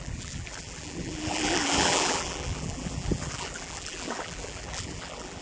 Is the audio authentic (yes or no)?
no